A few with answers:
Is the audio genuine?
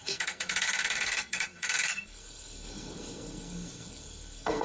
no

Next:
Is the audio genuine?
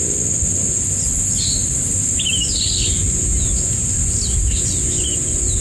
yes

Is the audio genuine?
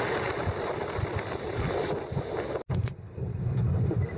yes